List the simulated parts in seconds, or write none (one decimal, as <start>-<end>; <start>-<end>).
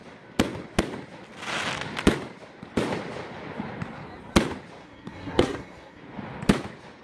4.8-6.0